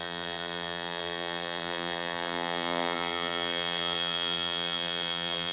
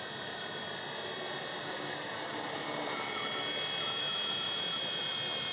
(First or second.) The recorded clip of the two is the second